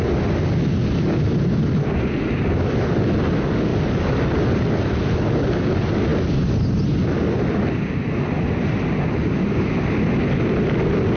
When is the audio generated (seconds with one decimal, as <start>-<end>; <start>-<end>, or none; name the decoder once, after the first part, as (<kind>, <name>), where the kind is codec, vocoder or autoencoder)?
none